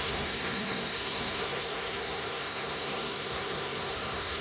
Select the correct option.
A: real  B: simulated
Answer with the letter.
B